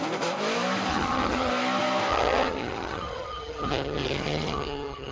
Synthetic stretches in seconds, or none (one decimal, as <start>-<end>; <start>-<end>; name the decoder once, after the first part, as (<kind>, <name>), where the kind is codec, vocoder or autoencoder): 0.9-1.5 (vocoder, HiFi-GAN); 2.1-5.1